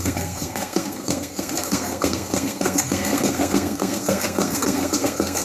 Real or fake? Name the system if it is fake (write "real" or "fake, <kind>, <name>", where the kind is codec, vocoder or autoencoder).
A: fake, codec, SNAC